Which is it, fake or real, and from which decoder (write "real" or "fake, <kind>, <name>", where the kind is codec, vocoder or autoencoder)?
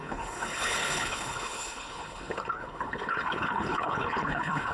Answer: fake, codec, HILCodec